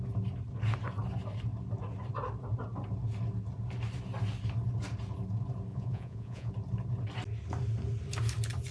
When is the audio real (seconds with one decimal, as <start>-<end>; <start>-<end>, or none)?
0.0-5.7; 6.5-8.7